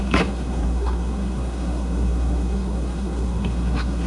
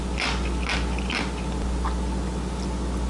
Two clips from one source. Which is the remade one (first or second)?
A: first